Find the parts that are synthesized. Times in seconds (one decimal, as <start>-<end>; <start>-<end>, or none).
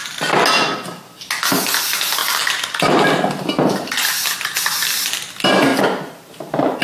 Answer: 2.2-3.3; 5.7-6.8